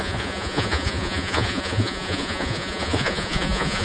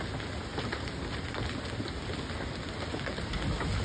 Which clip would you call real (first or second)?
second